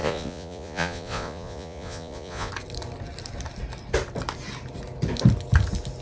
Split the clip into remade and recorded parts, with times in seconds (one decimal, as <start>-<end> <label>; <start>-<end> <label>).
0.0-2.5 remade; 2.5-6.0 recorded